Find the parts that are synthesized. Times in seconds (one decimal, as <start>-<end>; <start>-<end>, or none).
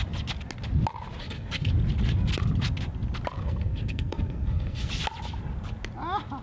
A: 1.2-1.7; 3.4-4.9